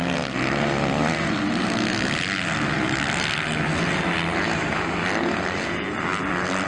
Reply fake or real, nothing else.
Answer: real